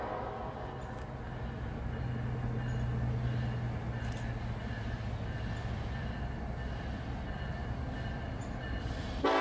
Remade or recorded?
recorded